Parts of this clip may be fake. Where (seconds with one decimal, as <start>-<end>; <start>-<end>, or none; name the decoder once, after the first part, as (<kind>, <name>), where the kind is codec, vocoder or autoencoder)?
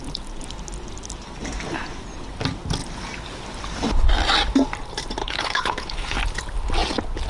5.2-6.2 (codec, HILCodec)